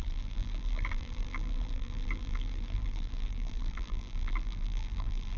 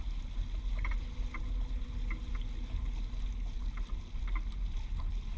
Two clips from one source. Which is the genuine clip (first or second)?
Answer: second